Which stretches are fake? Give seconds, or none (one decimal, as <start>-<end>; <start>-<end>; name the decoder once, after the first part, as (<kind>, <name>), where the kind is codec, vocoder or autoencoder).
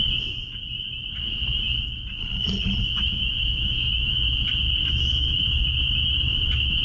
2.2-2.8 (codec, HILCodec)